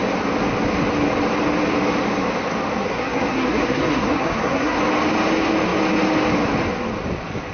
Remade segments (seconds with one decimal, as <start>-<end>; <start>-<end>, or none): 2.9-4.8